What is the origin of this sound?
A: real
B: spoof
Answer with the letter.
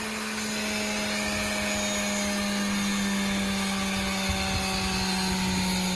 A